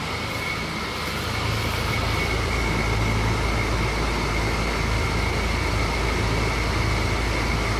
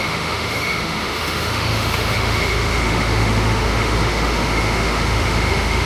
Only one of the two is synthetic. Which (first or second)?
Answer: second